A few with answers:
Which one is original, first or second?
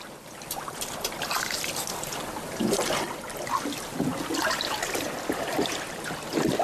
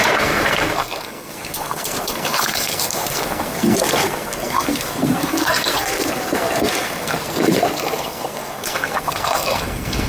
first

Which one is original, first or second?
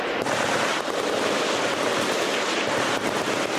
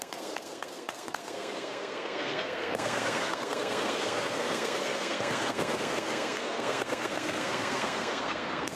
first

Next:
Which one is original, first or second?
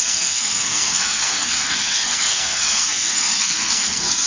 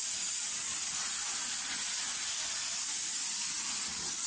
second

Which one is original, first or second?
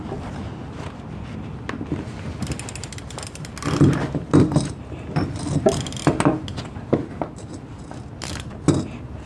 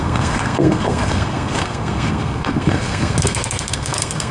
first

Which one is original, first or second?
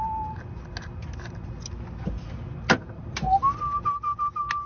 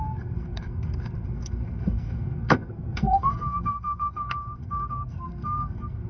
first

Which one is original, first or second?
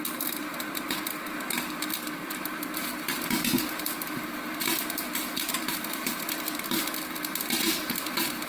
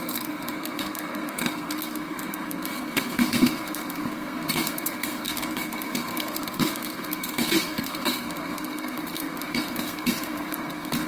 first